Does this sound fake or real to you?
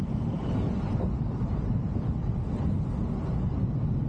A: real